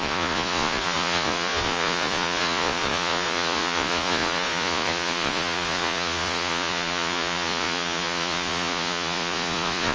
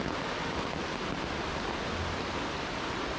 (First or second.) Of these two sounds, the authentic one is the second